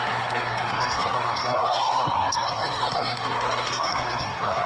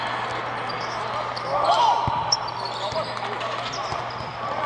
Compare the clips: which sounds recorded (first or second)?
second